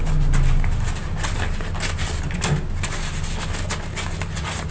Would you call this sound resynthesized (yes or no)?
no